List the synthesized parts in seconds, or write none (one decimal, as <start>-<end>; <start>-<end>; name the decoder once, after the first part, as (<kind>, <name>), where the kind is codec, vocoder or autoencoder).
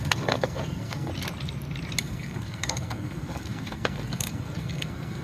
0.0-1.1 (codec, SNAC); 2.0-5.2